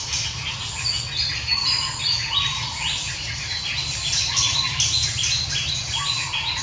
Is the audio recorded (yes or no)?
yes